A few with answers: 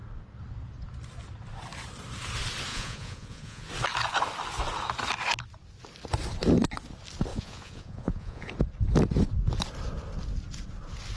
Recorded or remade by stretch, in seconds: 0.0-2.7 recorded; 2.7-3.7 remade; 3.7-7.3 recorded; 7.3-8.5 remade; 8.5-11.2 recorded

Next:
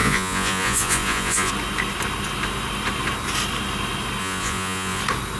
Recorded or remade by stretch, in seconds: 0.0-1.5 remade; 1.5-4.2 recorded; 4.2-5.0 remade; 5.0-5.4 recorded

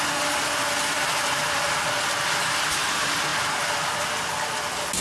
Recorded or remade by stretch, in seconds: 0.0-5.0 recorded

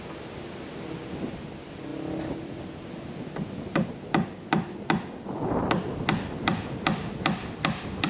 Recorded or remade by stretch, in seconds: 0.0-8.1 recorded

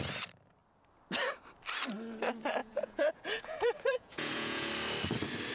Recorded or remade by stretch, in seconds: 0.0-2.6 recorded; 2.6-4.7 remade; 4.7-5.5 recorded

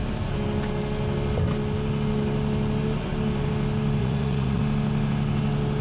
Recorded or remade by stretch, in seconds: 0.0-4.0 recorded; 4.0-4.6 remade; 4.6-5.8 recorded

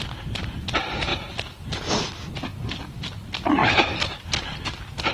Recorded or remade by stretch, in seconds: 0.0-5.1 recorded